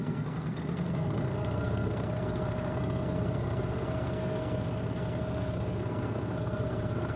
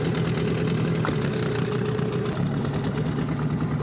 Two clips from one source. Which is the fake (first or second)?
first